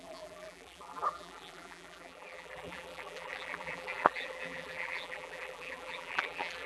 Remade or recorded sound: remade